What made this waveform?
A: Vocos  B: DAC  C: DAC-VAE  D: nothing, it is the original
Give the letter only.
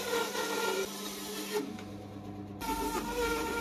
D